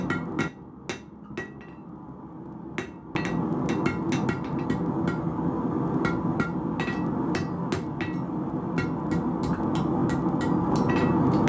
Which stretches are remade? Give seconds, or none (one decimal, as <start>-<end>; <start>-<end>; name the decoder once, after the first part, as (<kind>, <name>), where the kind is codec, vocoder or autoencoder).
none